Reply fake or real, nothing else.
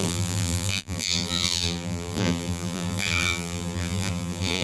fake